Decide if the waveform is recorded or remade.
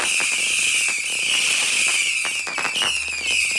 recorded